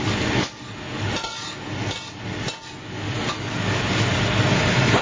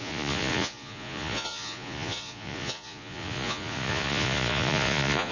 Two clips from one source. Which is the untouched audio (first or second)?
first